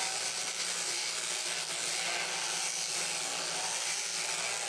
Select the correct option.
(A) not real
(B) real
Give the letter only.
B